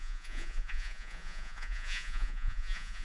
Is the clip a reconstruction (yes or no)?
yes